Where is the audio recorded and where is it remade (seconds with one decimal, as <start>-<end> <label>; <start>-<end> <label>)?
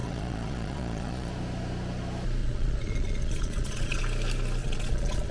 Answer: 0.0-1.3 remade; 1.3-2.4 recorded; 2.4-4.0 remade; 4.0-4.6 recorded; 4.6-5.3 remade